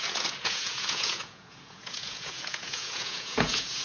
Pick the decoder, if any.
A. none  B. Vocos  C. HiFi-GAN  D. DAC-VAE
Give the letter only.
B